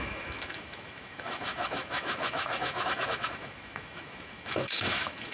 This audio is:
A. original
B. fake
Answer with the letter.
B